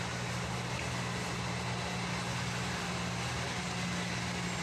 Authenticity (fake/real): real